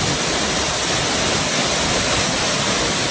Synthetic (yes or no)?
no